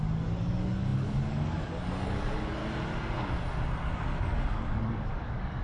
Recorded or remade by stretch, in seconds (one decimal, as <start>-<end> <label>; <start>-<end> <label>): 0.0-2.6 remade; 2.6-3.8 recorded; 3.8-5.6 remade